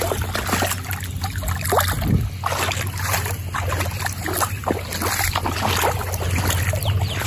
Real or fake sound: real